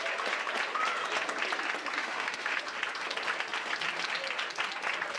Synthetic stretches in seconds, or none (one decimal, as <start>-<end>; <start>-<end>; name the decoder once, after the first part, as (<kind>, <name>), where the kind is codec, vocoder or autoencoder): 2.0-2.6 (autoencoder, DAC-VAE)